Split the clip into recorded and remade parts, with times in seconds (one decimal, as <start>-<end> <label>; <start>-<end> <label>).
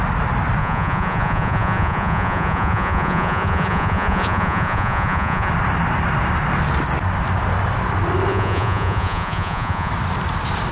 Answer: 0.0-0.6 recorded; 0.6-5.5 remade; 5.5-8.3 recorded; 8.3-9.9 remade; 9.9-10.7 recorded